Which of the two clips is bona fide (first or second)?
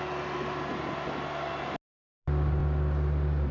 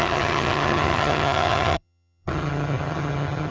first